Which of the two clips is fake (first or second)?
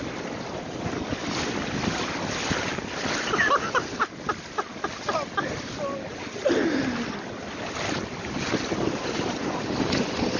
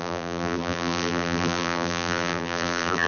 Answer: second